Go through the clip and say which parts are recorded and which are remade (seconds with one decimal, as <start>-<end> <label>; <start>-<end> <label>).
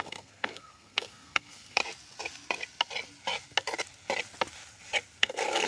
0.0-1.8 remade; 1.8-5.2 recorded; 5.2-5.7 remade